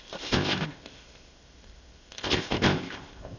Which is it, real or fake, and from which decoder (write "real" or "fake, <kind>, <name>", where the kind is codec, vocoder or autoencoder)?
fake, codec, ZipCodec